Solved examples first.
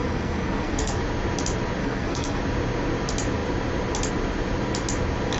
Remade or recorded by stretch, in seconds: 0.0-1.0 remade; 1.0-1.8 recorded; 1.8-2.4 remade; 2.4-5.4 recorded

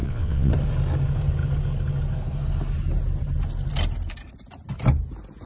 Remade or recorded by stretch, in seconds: 0.0-0.5 remade; 0.5-5.5 recorded

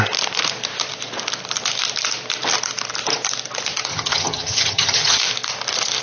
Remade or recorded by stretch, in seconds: 0.0-3.9 recorded; 3.9-5.2 remade; 5.2-6.0 recorded

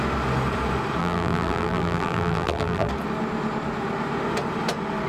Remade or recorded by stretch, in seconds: 0.0-1.0 recorded; 1.0-2.9 remade; 2.9-5.1 recorded

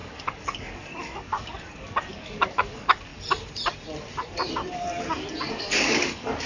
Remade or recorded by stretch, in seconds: 0.0-3.1 remade; 3.1-5.5 recorded; 5.5-6.5 remade

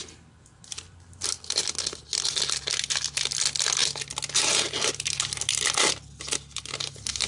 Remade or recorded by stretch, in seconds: 0.0-7.3 recorded

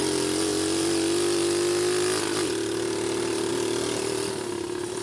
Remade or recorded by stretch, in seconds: 0.0-5.0 recorded

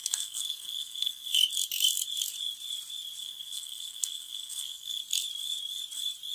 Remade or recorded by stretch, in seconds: 0.0-1.4 remade; 1.4-3.2 recorded; 3.2-5.0 remade; 5.0-6.3 recorded